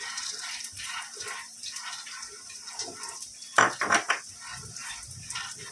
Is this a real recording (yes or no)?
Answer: no